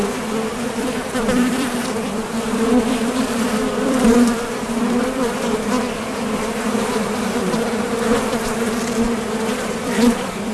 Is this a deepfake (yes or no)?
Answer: yes